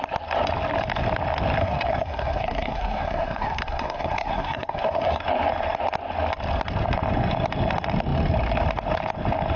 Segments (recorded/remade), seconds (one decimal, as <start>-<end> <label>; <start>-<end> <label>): 0.0-1.6 recorded; 1.6-5.2 remade; 5.2-9.6 recorded